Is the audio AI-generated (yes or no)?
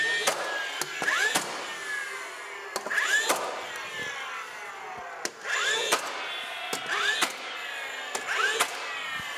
no